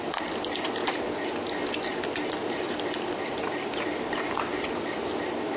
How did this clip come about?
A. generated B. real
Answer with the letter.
B